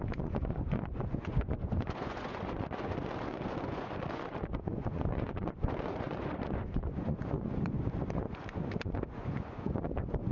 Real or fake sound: fake